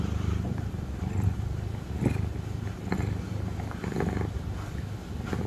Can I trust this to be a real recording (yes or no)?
yes